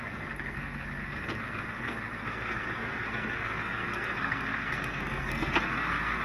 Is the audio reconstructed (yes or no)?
yes